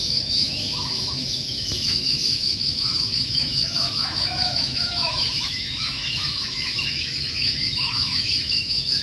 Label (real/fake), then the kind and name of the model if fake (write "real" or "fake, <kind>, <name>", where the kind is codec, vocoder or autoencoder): fake, autoencoder, DAC-VAE